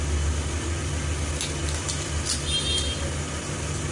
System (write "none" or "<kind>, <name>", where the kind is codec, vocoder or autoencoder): none